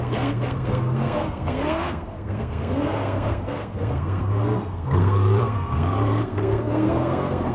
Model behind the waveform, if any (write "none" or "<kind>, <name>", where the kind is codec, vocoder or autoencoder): codec, SNAC